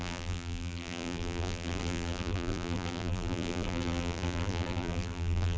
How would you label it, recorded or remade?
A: remade